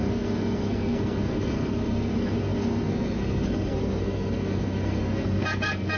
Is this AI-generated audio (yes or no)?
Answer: yes